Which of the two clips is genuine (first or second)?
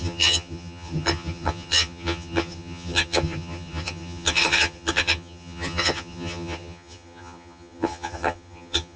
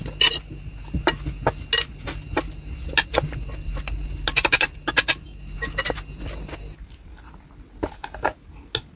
second